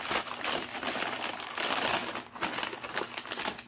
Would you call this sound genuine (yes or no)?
yes